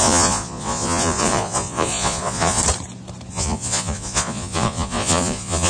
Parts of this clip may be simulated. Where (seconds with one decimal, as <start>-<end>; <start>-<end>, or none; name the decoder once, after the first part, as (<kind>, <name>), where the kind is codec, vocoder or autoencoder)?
0.0-2.6 (vocoder, Vocos); 3.3-5.7